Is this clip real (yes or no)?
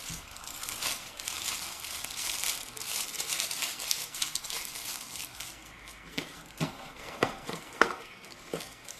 no